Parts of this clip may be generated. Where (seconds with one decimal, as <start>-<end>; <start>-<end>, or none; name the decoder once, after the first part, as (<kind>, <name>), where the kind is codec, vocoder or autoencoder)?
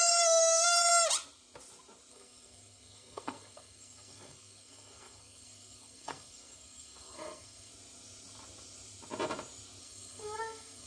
0.0-0.9 (codec, SNAC); 2.1-7.7; 9.8-10.9